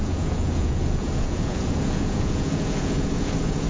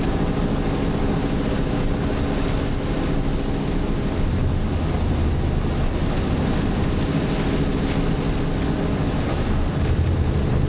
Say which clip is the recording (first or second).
second